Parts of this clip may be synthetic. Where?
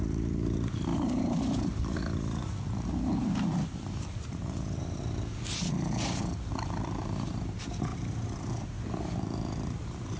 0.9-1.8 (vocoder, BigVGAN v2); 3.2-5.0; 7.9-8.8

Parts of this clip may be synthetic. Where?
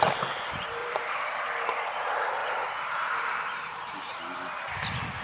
0.8-1.6 (vocoder, BigVGAN v2); 2.4-4.2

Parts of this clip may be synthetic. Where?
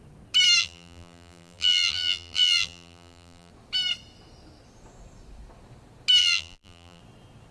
0.6-3.5 (vocoder, BigVGAN v2); 6.2-7.0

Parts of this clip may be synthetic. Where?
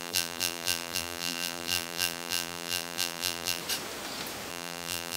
0.0-3.6 (vocoder, BigVGAN v2); 4.5-5.2